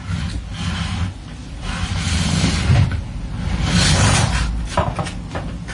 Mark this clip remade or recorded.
recorded